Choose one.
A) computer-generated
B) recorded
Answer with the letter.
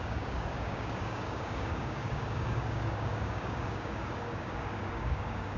A